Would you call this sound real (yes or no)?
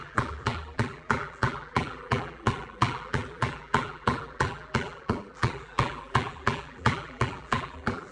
no